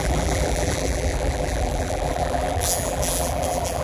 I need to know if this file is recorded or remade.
remade